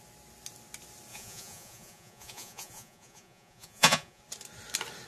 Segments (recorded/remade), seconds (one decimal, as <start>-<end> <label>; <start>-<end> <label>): 0.0-1.1 recorded; 1.1-4.2 remade; 4.2-5.1 recorded